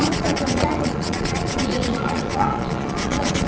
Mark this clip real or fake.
fake